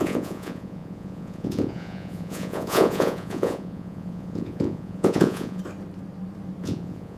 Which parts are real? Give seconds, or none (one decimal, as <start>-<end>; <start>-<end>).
5.6-6.6